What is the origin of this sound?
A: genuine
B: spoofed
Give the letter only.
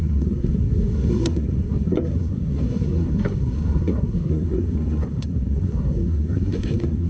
B